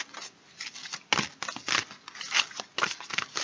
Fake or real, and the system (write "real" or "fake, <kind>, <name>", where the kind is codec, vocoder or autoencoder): real